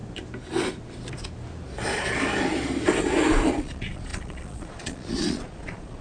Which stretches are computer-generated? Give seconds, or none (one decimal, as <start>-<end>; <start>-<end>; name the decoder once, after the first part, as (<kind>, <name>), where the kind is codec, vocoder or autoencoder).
3.6-6.0 (vocoder, Vocos)